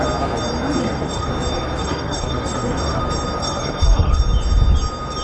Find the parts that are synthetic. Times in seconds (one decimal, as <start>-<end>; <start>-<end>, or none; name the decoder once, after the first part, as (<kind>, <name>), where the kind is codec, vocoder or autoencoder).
0.8-1.3 (codec, SNAC); 1.8-3.0; 3.4-4.2